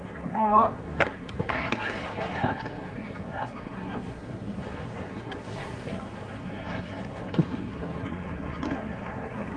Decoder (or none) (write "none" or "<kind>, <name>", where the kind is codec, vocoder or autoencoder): codec, SNAC